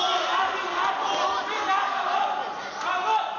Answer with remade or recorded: recorded